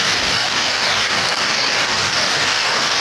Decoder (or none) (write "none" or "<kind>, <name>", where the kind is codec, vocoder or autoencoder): codec, DAC